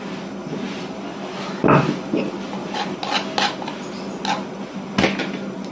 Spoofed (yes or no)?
no